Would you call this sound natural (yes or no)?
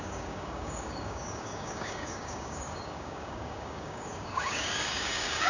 no